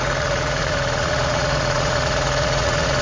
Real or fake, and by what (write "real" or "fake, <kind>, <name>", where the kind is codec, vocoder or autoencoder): fake, vocoder, Vocos